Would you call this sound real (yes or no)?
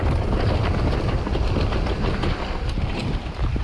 yes